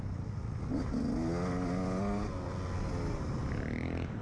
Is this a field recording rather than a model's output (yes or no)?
yes